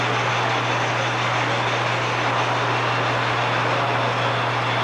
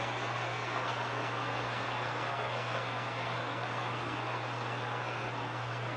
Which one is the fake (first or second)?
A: second